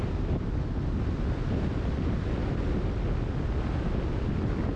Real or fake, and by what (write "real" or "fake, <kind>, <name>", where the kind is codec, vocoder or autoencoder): real